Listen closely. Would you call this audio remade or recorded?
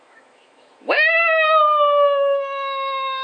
remade